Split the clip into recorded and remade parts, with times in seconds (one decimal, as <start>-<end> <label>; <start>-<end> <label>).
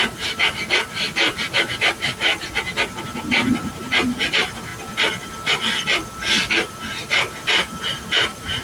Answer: 0.0-2.3 remade; 2.3-3.0 recorded; 3.0-4.7 remade; 4.7-6.5 recorded; 6.5-8.6 remade